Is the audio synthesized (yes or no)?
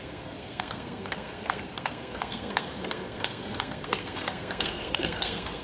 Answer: yes